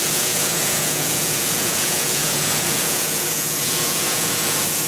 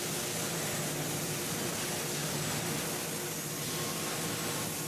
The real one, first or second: second